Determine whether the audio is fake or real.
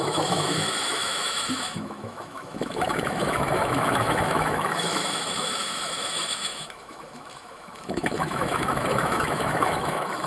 fake